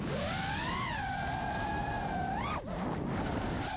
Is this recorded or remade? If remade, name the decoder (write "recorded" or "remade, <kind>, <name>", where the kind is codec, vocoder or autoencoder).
recorded